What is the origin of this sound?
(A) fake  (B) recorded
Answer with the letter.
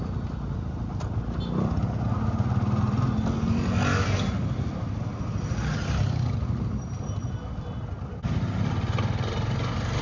B